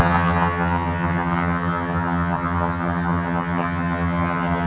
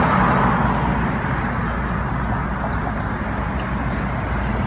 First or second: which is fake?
first